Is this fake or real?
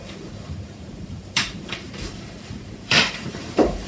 fake